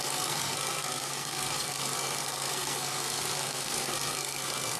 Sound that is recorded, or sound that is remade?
remade